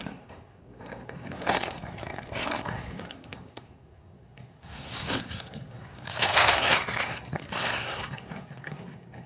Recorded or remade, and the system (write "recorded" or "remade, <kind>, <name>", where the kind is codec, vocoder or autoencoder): remade, codec, SNAC